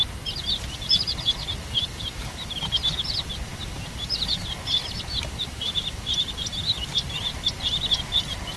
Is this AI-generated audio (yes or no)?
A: no